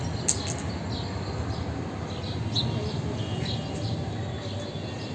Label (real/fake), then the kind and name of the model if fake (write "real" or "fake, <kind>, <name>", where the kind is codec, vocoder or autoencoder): real